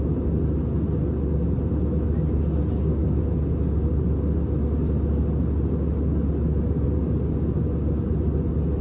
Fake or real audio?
real